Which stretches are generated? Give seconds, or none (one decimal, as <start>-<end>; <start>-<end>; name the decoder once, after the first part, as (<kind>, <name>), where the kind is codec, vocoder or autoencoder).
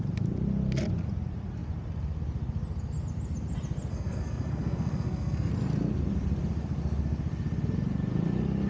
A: 3.9-5.5 (codec, SNAC)